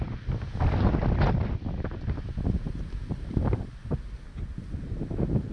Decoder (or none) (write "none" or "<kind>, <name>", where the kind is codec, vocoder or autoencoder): none